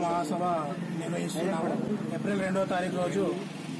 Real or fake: real